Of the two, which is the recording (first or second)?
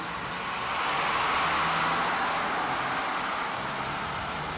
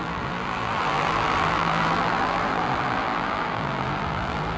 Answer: first